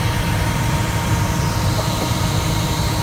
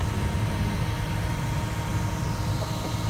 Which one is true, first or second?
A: second